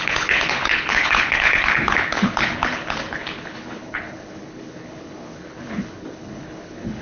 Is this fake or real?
fake